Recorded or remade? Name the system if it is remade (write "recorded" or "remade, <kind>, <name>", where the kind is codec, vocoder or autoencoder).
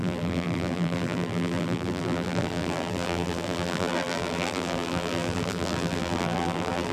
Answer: remade, vocoder, BigVGAN v2